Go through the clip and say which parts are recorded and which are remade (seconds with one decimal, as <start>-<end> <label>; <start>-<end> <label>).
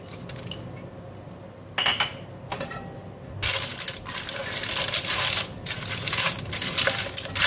0.0-7.5 recorded